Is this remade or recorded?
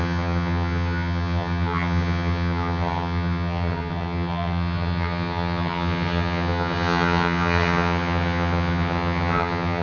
remade